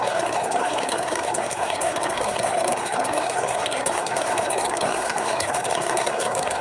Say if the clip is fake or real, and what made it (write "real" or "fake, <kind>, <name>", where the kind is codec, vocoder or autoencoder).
fake, codec, SNAC